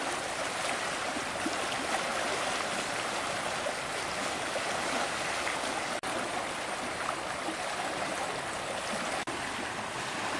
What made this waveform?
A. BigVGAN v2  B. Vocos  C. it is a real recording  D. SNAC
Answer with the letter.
C